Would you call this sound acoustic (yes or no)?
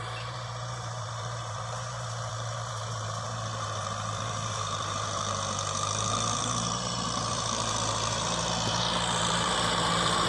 no